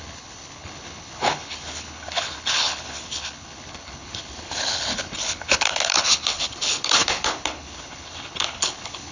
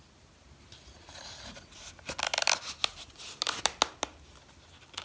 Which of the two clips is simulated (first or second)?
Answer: first